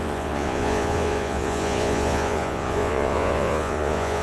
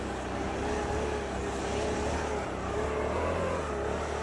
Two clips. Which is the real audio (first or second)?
second